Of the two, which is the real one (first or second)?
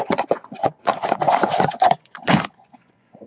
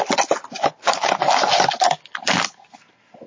second